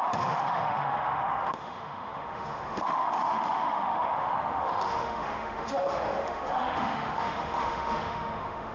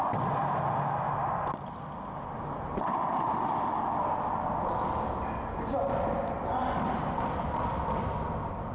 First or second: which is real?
second